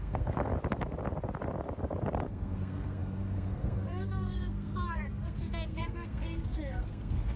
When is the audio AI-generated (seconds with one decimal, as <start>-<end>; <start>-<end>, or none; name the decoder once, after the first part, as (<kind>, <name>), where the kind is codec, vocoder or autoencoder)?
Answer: 0.0-0.5 (codec, SNAC); 2.2-7.4